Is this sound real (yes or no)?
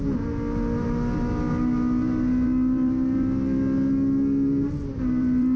yes